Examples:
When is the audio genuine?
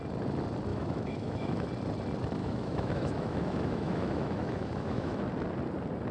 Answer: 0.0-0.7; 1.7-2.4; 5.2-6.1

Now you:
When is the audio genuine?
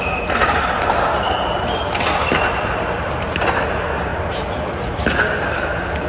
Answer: 0.0-6.1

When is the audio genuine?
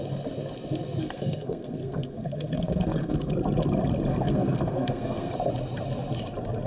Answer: 0.0-1.0; 3.3-4.1; 5.3-6.7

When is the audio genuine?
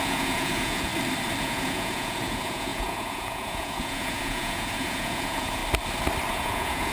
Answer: 0.9-1.4; 5.6-6.3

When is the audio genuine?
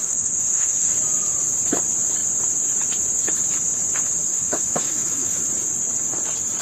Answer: 0.9-4.3; 5.4-6.6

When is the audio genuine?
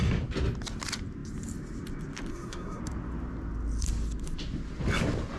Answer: 0.0-2.3; 2.8-5.4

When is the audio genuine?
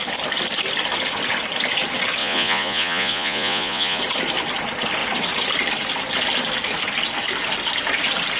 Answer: 0.0-2.2; 4.0-8.4